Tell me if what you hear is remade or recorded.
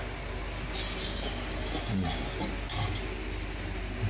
recorded